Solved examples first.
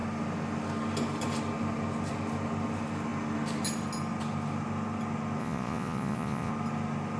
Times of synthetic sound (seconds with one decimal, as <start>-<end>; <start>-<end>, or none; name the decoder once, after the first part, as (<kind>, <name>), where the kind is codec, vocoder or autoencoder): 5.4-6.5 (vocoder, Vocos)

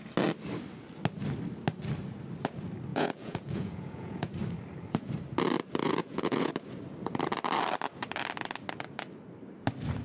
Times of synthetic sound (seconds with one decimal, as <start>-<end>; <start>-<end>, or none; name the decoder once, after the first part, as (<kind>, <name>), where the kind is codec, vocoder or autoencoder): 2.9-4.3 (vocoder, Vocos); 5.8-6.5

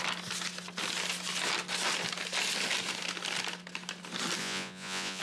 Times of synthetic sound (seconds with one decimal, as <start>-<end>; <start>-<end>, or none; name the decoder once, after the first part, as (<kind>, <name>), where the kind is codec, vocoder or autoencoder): 4.4-5.2 (vocoder, Vocos)